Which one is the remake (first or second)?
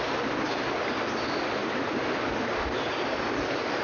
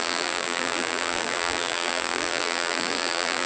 second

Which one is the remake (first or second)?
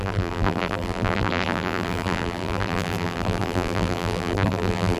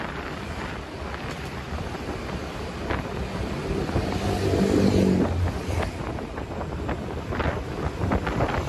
first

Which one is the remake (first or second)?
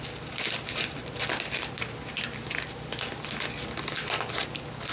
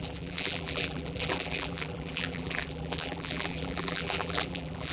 second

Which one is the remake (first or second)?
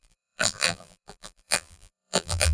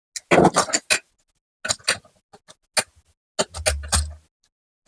first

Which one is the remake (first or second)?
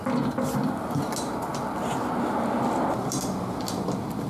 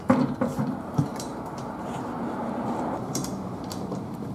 second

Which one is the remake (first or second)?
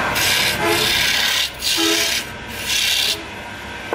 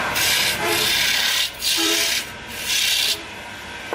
second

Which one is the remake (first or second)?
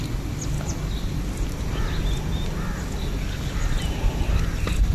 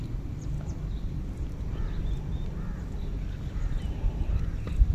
second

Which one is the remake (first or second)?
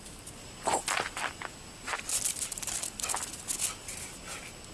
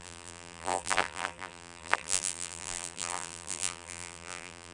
second